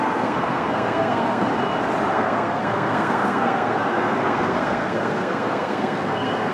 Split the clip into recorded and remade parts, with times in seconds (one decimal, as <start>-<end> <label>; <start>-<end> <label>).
0.0-1.5 remade; 1.5-2.1 recorded; 2.1-6.5 remade